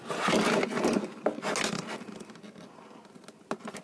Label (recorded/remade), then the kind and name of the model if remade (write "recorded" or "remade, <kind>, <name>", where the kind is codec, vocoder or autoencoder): recorded